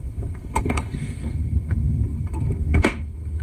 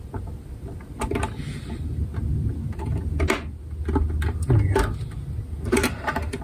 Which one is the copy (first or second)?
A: first